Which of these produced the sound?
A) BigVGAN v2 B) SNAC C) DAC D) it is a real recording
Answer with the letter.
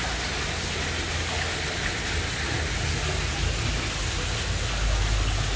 D